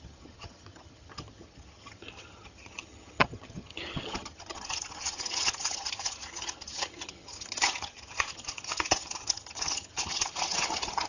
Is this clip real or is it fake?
fake